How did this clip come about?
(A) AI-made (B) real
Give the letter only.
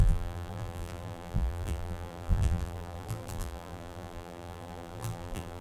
A